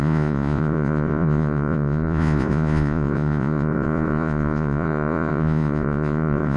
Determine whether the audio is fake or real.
fake